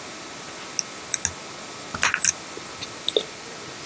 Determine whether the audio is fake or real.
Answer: real